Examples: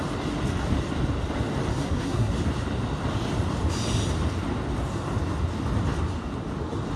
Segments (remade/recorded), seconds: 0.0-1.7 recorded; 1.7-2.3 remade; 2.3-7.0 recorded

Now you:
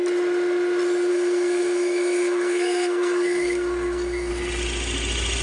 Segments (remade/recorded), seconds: 0.0-1.1 recorded; 1.1-4.3 remade; 4.3-5.4 recorded

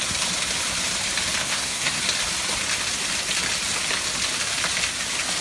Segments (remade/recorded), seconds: 0.0-1.4 recorded; 1.4-2.0 remade; 2.0-5.4 recorded

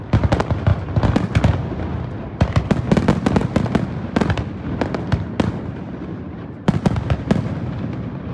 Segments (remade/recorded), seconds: 0.0-8.3 recorded